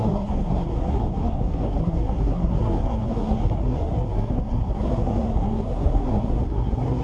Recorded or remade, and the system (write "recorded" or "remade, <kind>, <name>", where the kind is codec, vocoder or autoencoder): remade, codec, SNAC